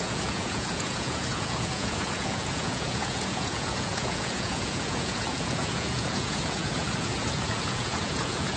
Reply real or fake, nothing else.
fake